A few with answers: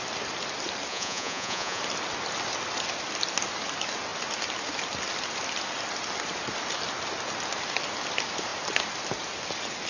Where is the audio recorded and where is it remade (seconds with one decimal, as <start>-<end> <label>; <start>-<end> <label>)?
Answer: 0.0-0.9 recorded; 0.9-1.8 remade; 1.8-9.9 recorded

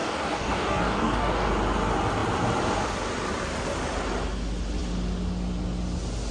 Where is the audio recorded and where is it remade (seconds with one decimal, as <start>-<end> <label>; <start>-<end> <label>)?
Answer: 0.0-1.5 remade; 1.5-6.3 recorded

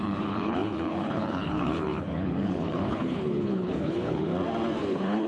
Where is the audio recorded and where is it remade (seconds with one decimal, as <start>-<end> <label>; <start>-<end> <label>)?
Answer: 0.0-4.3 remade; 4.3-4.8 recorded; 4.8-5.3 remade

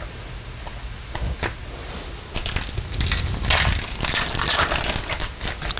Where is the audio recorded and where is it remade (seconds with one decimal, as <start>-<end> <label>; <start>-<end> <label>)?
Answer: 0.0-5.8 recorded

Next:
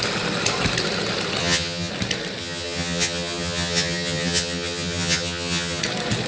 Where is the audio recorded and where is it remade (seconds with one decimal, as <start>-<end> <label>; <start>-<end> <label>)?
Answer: 0.0-1.4 recorded; 1.4-1.9 remade; 1.9-2.4 recorded; 2.4-5.8 remade; 5.8-6.3 recorded

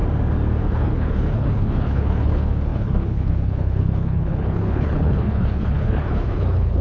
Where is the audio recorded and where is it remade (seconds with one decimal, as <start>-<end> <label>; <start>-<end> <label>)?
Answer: 0.0-0.6 recorded; 0.6-6.8 remade